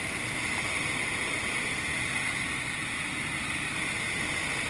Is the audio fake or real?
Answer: real